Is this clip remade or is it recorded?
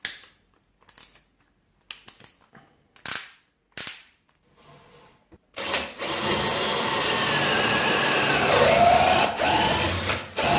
recorded